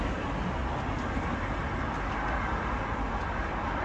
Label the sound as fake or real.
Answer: real